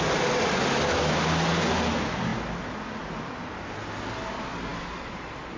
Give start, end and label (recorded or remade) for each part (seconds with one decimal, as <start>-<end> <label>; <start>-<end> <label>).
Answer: 0.0-5.6 recorded